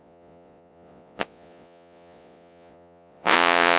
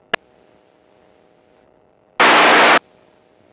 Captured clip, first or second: second